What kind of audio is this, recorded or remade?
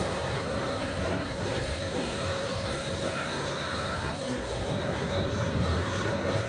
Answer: remade